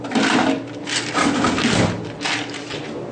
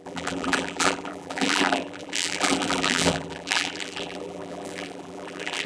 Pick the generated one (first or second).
second